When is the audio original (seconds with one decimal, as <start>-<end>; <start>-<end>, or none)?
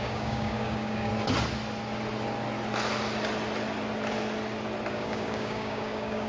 1.1-4.9